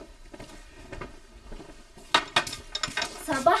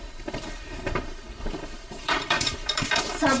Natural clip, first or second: first